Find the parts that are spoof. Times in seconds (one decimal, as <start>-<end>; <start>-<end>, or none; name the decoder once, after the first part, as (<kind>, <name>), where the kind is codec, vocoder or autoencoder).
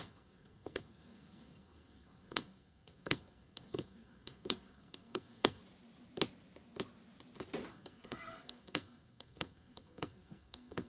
0.0-5.6 (codec, SNAC); 7.7-10.9